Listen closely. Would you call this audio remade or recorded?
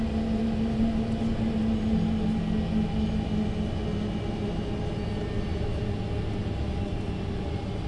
recorded